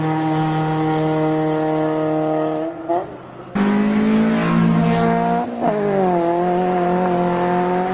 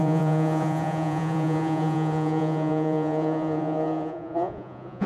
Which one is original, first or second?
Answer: first